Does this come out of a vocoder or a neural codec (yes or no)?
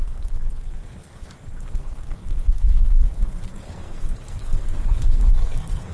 yes